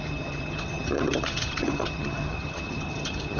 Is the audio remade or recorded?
remade